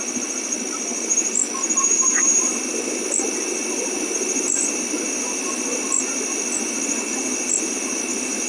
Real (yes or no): yes